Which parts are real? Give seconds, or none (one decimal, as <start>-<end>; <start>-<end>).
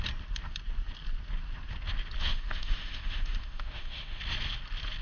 0.0-2.2; 4.2-5.0